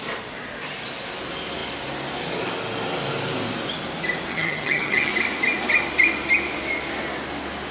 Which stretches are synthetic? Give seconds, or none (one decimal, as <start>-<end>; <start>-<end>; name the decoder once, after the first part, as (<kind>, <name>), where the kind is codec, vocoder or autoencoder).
4.3-5.1 (vocoder, HiFi-GAN)